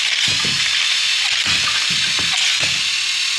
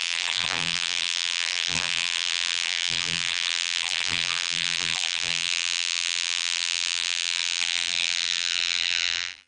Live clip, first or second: first